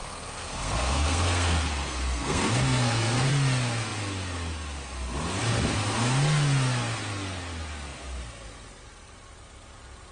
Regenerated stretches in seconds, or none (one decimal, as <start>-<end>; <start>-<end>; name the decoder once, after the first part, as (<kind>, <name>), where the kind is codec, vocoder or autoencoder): 0.0-3.3 (codec, SNAC)